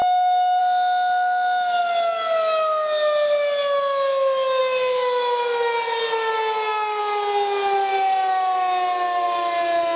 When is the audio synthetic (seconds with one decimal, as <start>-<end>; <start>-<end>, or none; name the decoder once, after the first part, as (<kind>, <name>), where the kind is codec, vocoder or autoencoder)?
0.0-0.6 (codec, DAC); 4.6-7.0